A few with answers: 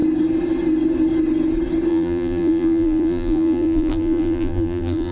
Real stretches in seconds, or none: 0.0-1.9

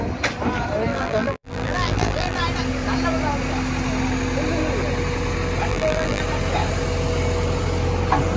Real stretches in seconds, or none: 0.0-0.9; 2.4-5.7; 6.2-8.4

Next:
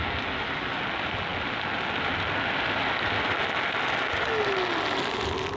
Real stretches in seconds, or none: 0.0-5.6